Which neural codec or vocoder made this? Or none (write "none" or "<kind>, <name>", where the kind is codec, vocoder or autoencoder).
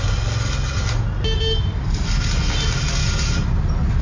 none